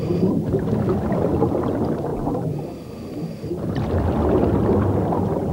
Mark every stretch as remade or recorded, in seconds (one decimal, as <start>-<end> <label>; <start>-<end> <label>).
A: 0.0-5.5 recorded